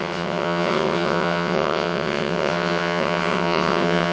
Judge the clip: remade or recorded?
remade